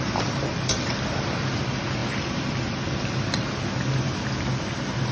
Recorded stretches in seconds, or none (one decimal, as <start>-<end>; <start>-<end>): 0.0-5.1